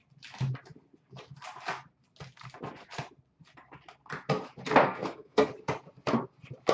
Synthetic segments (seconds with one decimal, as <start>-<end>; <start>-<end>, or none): 4.8-5.5